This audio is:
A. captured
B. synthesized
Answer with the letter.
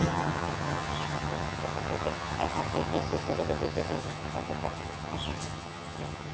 B